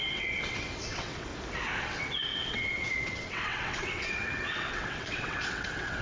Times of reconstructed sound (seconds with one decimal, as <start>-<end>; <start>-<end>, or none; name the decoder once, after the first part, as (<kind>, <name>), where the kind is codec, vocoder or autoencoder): 0.0-1.3 (vocoder, WaveNeXt); 1.8-6.0